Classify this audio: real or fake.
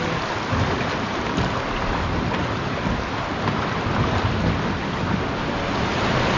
real